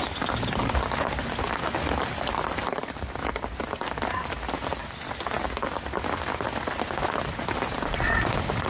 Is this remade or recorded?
recorded